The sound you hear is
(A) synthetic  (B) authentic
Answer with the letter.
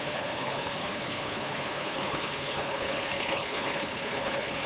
A